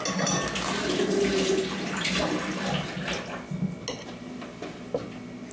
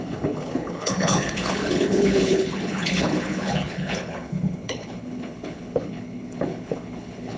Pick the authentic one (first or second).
first